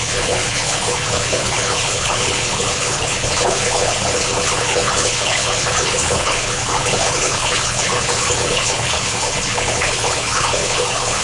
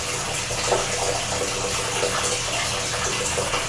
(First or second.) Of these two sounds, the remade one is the first